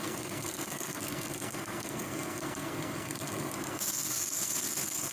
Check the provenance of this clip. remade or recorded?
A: remade